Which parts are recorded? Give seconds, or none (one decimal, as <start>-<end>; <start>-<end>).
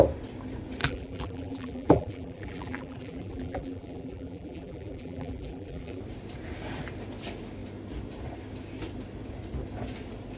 0.0-0.8; 6.0-10.4